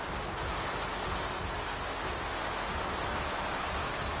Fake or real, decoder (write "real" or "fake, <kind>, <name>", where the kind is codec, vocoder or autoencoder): real